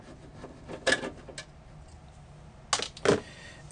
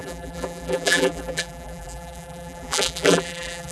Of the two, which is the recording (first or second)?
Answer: first